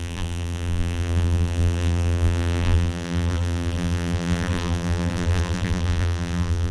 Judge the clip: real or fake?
fake